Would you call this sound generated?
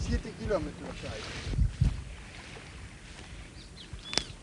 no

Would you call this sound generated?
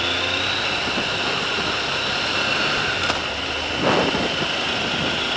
no